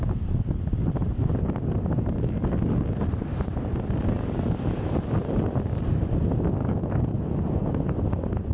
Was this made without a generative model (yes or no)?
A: yes